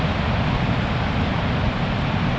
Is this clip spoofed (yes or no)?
no